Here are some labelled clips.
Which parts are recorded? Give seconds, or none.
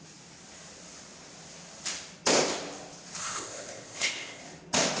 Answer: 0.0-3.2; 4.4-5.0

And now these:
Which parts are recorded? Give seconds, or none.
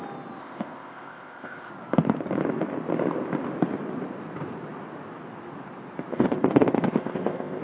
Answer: 0.0-0.4; 1.7-6.1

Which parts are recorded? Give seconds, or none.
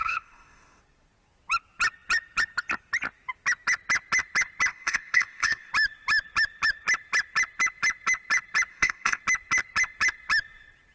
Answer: 0.8-4.7; 5.7-8.7; 9.2-10.9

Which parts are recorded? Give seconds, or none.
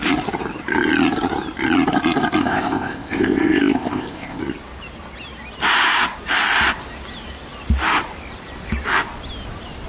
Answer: 0.0-2.4; 4.4-9.9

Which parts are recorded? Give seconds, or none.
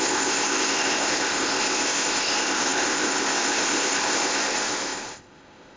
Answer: none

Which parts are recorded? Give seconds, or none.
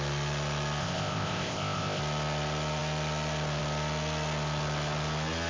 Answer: 0.0-0.8; 2.0-5.5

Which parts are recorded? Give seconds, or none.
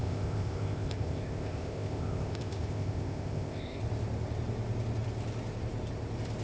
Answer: 3.8-6.4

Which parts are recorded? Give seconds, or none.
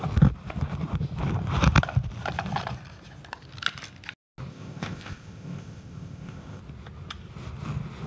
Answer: 0.0-4.5; 6.6-8.1